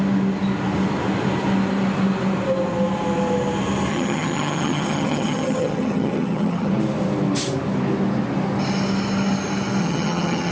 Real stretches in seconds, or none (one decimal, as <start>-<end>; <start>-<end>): 0.0-3.9; 6.7-9.8